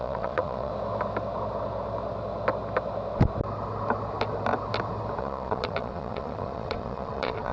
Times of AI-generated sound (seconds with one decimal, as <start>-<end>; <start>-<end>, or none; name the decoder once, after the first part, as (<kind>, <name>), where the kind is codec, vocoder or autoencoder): 0.0-0.7 (vocoder, Vocos); 5.2-7.5